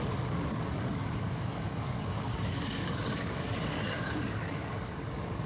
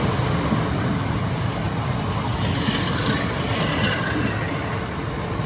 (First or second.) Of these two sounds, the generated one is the first